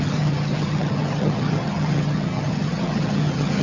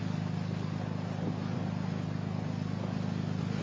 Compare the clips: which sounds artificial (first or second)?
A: first